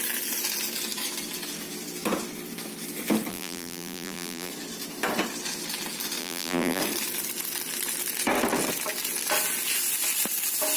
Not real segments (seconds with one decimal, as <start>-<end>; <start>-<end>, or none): 3.3-4.5; 6.2-6.8